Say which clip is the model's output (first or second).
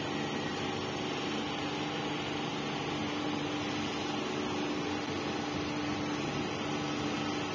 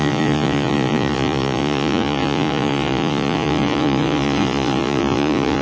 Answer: second